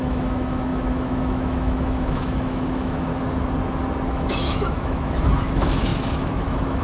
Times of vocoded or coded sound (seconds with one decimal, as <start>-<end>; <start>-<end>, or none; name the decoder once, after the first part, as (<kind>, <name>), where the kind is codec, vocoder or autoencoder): 0.0-3.1 (autoencoder, DAC-VAE); 4.1-6.8